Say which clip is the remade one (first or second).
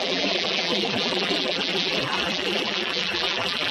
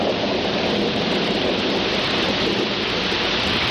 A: first